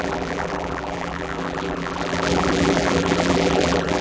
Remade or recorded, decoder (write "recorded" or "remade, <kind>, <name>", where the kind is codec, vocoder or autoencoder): remade, vocoder, BigVGAN v2